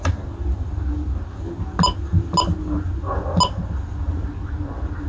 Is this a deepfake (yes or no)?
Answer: no